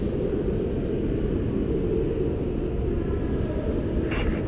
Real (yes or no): yes